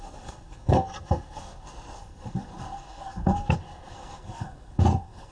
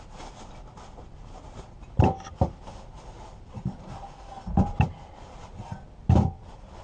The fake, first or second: first